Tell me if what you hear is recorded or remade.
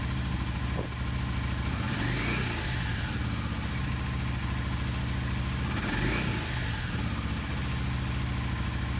recorded